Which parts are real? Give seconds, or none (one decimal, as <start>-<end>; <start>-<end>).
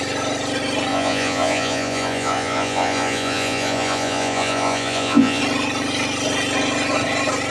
0.0-0.9; 5.4-7.5